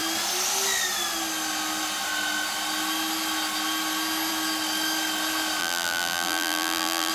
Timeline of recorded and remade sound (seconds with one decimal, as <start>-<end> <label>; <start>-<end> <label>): 0.0-5.6 recorded; 5.6-7.1 remade